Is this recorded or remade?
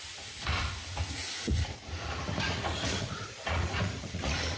remade